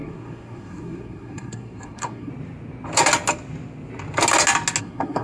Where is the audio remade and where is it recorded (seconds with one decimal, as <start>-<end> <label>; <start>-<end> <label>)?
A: 0.0-2.3 remade; 2.3-4.8 recorded; 4.8-5.2 remade